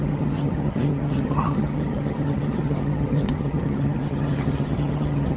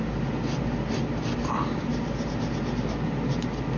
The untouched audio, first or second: second